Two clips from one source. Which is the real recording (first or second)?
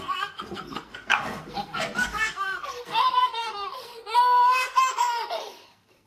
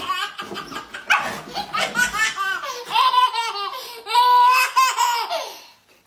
second